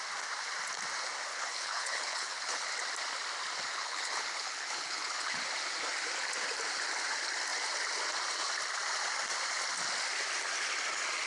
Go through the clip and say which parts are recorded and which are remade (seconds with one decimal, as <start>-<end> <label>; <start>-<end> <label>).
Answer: 0.0-1.3 recorded; 1.3-2.7 remade; 2.7-3.7 recorded; 3.7-5.4 remade; 5.4-11.3 recorded